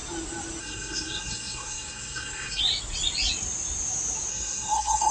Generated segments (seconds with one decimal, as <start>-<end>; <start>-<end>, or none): 0.6-2.6; 4.3-5.1